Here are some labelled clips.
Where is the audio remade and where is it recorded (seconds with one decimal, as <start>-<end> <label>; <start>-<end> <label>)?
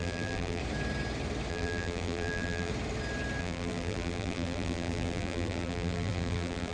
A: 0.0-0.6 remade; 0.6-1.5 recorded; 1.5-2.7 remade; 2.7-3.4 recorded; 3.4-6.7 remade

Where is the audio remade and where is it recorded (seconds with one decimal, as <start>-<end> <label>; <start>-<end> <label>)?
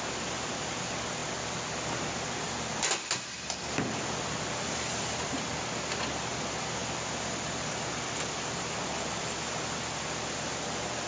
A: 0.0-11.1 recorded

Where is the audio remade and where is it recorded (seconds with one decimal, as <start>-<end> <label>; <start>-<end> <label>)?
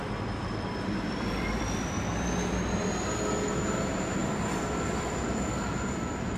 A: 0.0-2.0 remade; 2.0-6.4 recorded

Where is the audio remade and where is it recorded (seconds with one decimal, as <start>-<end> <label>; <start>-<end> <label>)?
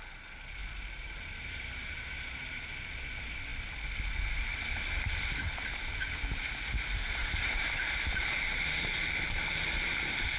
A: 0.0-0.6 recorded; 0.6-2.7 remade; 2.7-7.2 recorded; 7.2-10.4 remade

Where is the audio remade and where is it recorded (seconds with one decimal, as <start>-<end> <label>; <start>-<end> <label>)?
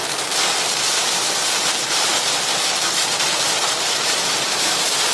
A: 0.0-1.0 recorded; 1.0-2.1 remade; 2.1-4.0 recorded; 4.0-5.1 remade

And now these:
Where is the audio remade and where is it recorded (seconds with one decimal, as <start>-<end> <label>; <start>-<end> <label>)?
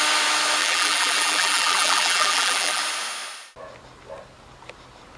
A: 0.0-0.6 recorded; 0.6-2.8 remade; 2.8-5.2 recorded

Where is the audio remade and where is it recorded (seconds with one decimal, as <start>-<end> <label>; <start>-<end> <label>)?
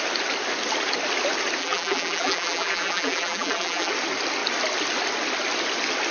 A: 0.0-1.6 recorded; 1.6-3.9 remade; 3.9-6.1 recorded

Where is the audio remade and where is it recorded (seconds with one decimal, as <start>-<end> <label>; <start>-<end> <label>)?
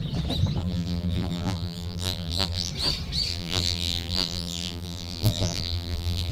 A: 0.0-0.6 recorded; 0.6-2.7 remade; 2.7-3.3 recorded; 3.3-6.3 remade